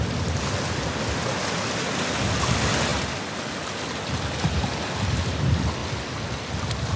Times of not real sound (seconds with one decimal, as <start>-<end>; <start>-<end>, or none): none

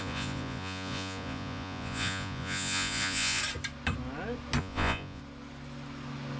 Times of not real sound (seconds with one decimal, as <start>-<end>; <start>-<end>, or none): 0.0-3.4; 4.6-5.2

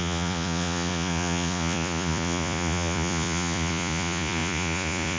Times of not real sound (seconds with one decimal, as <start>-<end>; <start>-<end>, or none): 0.0-5.2

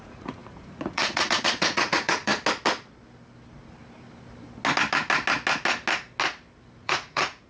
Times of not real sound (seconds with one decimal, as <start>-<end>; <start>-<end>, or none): 0.0-2.3; 6.8-7.5

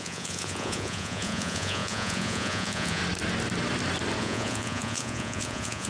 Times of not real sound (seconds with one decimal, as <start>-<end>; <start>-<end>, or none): 0.0-3.0; 4.2-5.9

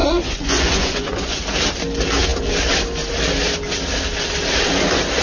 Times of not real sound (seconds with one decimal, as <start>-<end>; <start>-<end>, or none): 0.0-1.4

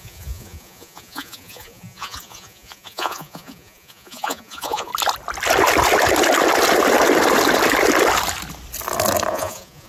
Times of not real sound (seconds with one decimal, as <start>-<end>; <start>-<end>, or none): 0.0-4.9; 9.3-9.9

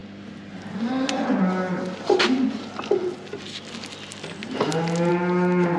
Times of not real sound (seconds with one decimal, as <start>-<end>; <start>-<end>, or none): none